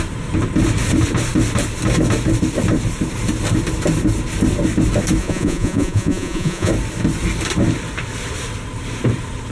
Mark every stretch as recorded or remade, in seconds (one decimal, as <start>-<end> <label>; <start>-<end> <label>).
0.0-5.2 recorded; 5.2-6.7 remade; 6.7-9.5 recorded